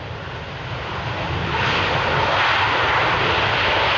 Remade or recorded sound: recorded